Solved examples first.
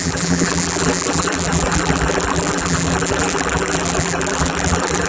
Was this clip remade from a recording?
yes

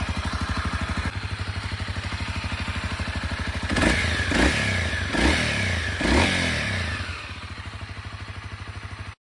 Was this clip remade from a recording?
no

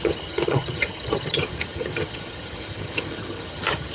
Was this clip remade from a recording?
yes